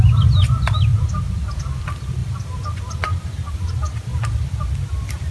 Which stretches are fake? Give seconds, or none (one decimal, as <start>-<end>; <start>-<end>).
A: none